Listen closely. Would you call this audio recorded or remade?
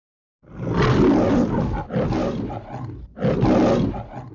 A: recorded